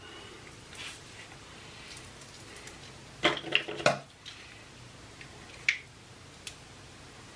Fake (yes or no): no